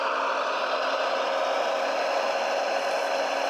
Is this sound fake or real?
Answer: real